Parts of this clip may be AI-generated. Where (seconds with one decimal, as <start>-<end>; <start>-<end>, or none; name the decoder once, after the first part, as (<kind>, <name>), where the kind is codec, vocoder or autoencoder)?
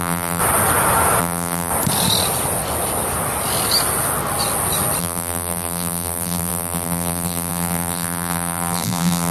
0.0-0.4 (vocoder, BigVGAN v2); 1.2-1.7; 5.0-9.3